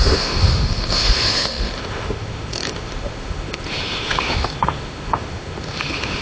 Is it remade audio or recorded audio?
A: remade